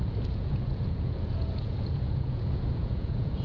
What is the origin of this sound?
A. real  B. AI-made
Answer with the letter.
B